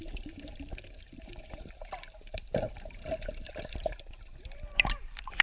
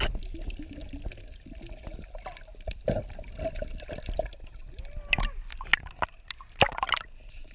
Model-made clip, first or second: first